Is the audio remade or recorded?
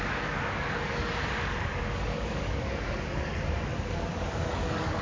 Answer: remade